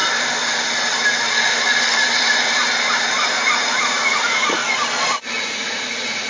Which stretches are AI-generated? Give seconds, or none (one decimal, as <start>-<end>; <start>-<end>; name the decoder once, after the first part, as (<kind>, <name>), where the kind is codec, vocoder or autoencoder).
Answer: 3.1-4.6 (vocoder, Vocos); 5.4-6.3